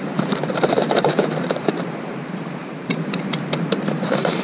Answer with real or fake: fake